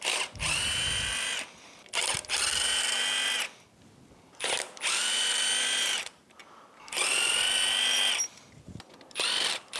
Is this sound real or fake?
real